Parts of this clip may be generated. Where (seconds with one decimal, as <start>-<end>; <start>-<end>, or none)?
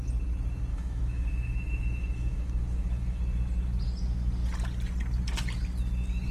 0.7-3.2